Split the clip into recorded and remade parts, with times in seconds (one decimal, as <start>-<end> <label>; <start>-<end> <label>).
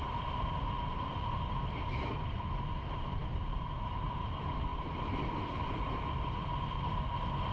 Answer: 0.0-7.5 recorded